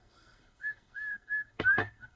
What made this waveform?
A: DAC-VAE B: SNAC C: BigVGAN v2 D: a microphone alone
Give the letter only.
B